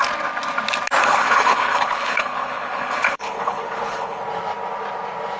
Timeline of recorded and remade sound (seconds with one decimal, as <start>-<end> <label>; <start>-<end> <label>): 0.0-1.0 recorded; 1.0-4.2 remade; 4.2-5.4 recorded